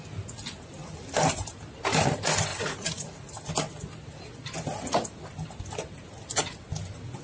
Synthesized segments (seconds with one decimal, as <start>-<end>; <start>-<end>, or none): 2.5-3.5